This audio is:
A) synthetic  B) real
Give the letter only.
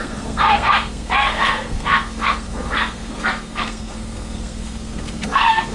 A